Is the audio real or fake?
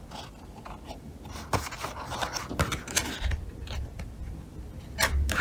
real